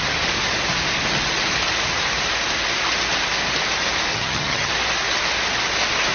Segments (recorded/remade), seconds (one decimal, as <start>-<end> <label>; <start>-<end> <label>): 0.0-4.1 recorded; 4.1-4.7 remade; 4.7-6.1 recorded